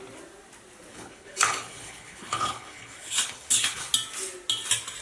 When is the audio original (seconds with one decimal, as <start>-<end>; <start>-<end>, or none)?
0.0-0.9; 3.9-5.0